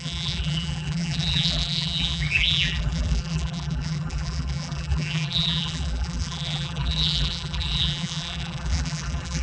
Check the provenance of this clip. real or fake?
fake